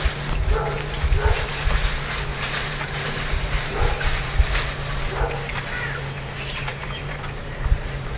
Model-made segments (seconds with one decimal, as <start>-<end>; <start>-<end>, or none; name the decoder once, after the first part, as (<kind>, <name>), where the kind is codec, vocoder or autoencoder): 2.3-5.0 (vocoder, BigVGAN v2); 6.7-8.2

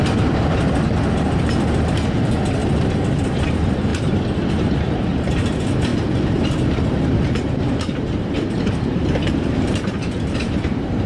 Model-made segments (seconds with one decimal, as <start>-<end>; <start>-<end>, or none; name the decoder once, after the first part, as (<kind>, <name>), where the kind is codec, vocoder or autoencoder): 0.0-2.6 (vocoder, BigVGAN v2); 3.2-3.9; 4.5-11.1

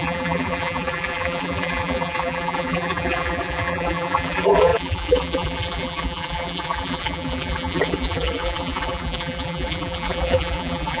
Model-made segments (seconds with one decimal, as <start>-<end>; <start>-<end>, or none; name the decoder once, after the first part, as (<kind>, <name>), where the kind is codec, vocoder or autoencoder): 0.0-11.0 (vocoder, BigVGAN v2)

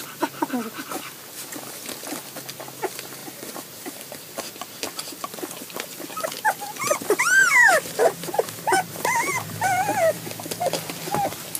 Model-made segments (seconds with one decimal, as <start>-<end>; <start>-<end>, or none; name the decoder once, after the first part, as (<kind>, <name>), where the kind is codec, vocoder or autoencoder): 3.2-4.2 (vocoder, BigVGAN v2); 7.4-10.2

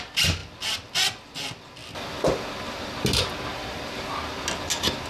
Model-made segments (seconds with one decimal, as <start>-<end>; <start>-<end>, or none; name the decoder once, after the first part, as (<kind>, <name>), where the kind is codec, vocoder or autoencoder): 0.0-1.8 (vocoder, BigVGAN v2)

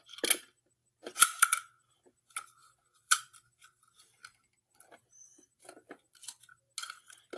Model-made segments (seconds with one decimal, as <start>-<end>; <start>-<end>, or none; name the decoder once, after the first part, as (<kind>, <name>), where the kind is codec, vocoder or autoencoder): 2.6-3.8 (vocoder, BigVGAN v2); 5.0-6.3

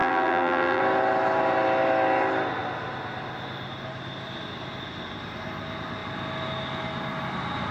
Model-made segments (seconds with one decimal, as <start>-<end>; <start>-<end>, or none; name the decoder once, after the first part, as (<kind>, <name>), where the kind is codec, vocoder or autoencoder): 0.0-0.8 (vocoder, BigVGAN v2)